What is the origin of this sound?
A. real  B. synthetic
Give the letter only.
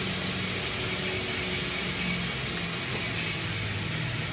A